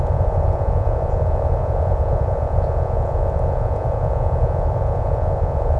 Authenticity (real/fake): fake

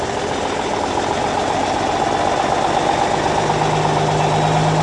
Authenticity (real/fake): real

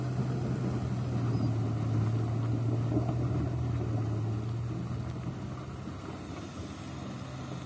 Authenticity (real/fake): real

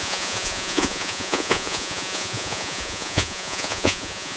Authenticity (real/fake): fake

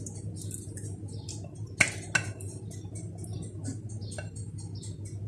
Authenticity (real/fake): real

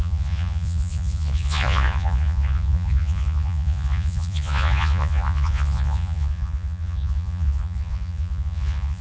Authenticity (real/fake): fake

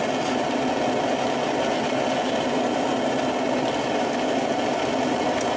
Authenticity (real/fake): real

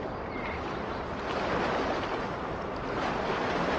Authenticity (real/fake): real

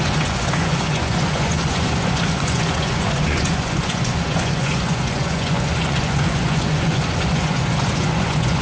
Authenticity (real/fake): fake